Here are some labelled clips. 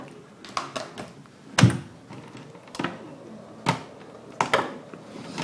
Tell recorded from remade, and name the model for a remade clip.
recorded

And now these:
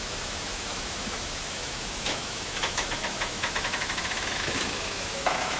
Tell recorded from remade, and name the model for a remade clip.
remade, autoencoder, DAC-VAE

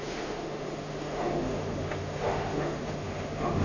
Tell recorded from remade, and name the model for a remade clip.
remade, autoencoder, DAC-VAE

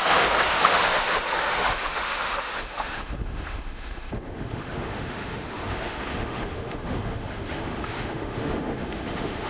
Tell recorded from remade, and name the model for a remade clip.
remade, autoencoder, DAC-VAE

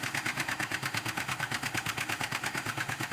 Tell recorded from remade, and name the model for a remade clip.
remade, autoencoder, DAC-VAE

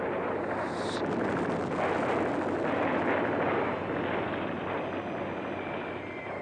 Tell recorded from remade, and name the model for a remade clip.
recorded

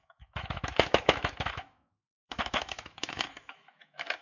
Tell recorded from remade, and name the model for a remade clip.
remade, autoencoder, DAC-VAE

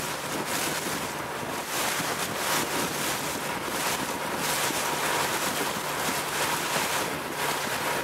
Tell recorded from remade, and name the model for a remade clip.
recorded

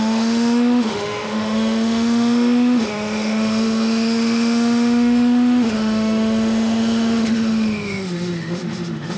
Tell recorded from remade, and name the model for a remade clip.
remade, autoencoder, DAC-VAE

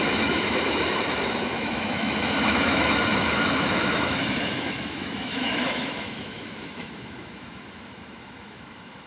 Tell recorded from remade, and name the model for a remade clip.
remade, autoencoder, DAC-VAE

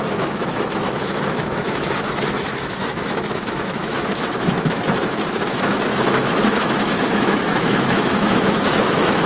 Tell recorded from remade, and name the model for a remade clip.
remade, autoencoder, DAC-VAE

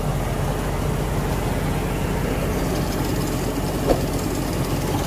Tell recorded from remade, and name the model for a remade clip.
recorded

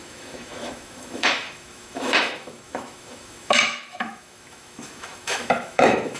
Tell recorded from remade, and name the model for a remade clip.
remade, autoencoder, DAC-VAE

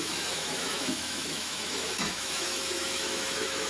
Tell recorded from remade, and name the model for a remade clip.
remade, autoencoder, DAC-VAE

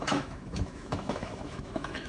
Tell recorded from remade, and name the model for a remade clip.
remade, autoencoder, DAC-VAE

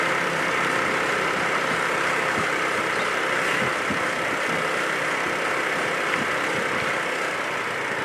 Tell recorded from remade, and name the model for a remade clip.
recorded